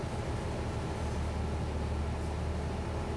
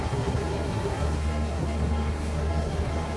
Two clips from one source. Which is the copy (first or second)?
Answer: second